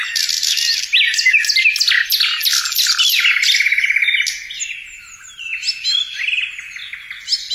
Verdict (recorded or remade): recorded